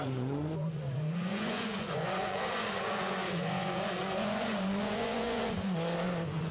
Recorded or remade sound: remade